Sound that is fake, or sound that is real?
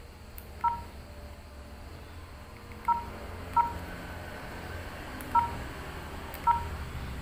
real